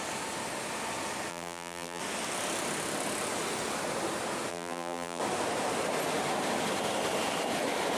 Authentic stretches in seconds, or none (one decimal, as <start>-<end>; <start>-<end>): 0.0-1.3; 2.0-4.5; 5.2-8.0